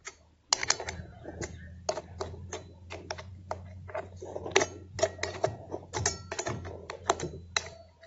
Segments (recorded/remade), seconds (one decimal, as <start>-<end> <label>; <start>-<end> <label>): 0.0-8.1 recorded